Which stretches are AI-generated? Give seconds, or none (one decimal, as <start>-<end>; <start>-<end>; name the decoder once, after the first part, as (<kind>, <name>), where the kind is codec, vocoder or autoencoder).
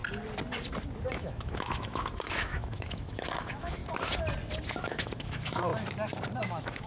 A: 1.1-3.8 (autoencoder, DAC-VAE); 4.8-5.7; 6.4-6.9